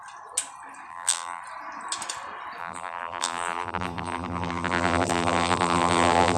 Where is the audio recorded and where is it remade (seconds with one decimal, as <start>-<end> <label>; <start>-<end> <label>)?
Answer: 0.0-0.9 recorded; 0.9-1.4 remade; 1.4-2.6 recorded; 2.6-6.4 remade